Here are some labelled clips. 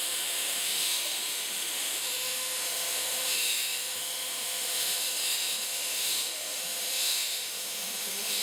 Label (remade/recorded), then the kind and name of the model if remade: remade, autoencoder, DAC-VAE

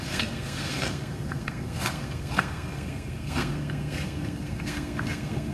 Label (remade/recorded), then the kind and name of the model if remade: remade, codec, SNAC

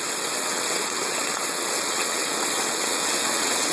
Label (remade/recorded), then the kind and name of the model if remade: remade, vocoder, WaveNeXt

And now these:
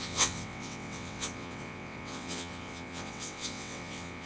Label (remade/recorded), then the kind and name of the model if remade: remade, vocoder, WaveNeXt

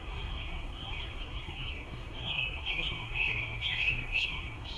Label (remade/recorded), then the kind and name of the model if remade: remade, codec, SNAC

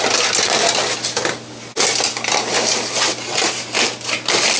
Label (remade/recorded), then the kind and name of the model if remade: recorded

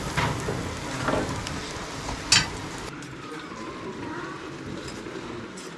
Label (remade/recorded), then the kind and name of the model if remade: recorded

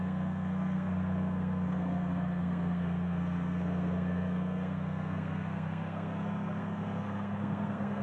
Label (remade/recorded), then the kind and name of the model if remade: remade, codec, SNAC